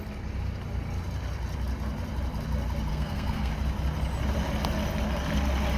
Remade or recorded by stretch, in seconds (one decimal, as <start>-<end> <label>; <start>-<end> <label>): 0.0-2.9 recorded; 2.9-3.5 remade; 3.5-5.8 recorded